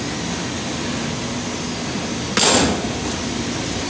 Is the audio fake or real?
real